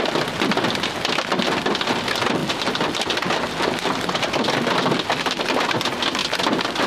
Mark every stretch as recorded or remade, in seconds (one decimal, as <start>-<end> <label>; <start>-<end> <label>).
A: 0.0-2.4 recorded; 2.4-5.4 remade; 5.4-6.9 recorded